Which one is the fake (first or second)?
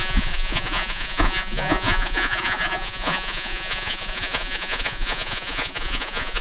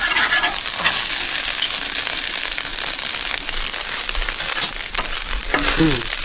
first